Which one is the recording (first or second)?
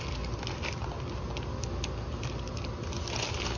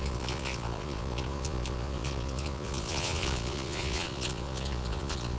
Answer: first